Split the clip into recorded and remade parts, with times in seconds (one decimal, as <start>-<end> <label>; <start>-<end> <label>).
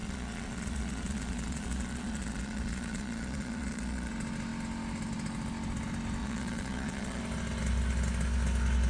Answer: 0.0-4.1 remade; 4.1-6.2 recorded; 6.2-7.2 remade; 7.2-8.9 recorded